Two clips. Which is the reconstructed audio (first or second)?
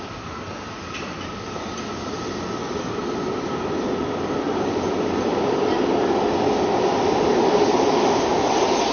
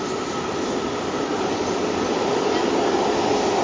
second